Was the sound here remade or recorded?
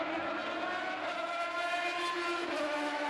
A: recorded